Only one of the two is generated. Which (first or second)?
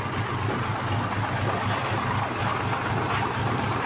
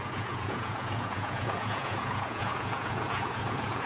second